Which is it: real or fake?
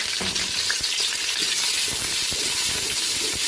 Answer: fake